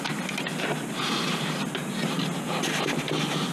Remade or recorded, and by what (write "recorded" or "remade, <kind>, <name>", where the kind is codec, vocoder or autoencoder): recorded